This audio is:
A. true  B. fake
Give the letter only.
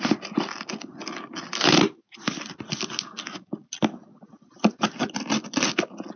A